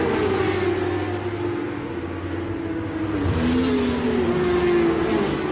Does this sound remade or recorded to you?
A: recorded